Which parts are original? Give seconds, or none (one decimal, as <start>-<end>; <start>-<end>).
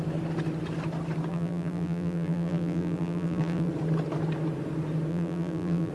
0.0-1.3; 3.7-5.1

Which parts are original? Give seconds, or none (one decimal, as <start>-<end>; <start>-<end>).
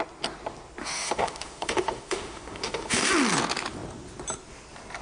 0.0-0.8; 3.1-5.0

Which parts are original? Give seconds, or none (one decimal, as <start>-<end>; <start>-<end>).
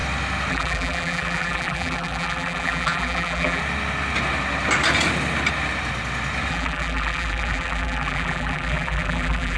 0.0-0.5; 3.6-6.5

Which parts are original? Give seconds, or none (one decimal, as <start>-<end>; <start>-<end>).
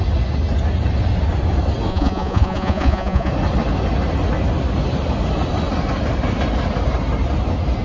0.0-1.9; 3.3-7.8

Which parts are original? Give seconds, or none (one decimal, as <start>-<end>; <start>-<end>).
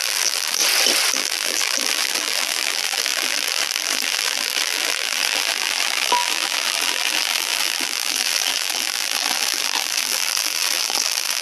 0.6-1.1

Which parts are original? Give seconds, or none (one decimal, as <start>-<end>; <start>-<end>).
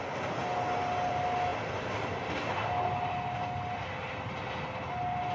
0.0-5.3